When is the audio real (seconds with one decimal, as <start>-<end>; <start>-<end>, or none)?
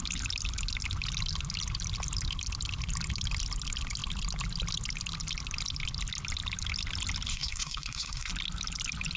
0.0-7.3; 8.3-9.2